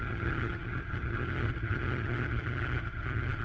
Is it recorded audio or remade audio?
remade